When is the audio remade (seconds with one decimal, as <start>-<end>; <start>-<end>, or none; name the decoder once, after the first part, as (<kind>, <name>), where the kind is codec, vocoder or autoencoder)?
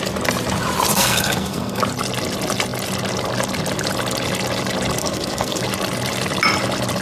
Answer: 0.9-1.8 (codec, SNAC); 5.0-5.6